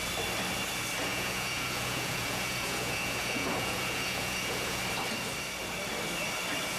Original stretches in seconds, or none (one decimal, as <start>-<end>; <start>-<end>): 0.0-1.1; 4.8-6.8

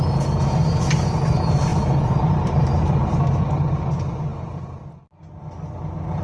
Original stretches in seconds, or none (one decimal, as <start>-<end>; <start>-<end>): 0.0-1.7; 3.1-6.2

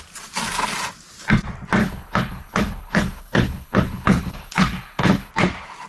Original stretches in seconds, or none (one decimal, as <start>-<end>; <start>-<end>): 0.0-1.8; 5.3-5.9

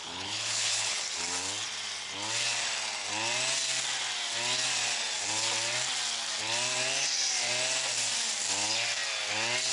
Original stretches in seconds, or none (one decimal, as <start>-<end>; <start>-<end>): 1.0-9.7

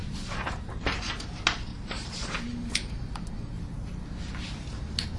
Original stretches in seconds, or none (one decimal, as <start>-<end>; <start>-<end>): 1.1-1.7; 3.0-5.2

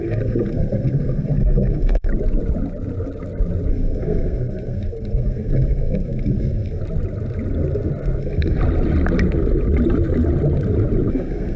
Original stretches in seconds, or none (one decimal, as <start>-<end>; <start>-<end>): 2.1-3.7; 6.8-8.2; 8.6-11.1